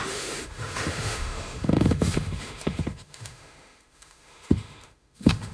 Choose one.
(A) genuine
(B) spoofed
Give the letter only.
B